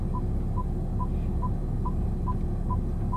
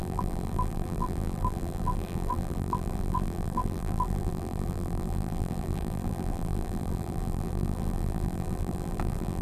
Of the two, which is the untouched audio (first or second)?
first